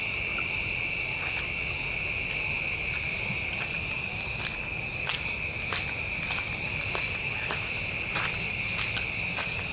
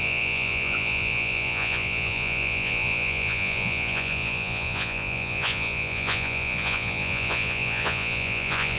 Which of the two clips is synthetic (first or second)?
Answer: second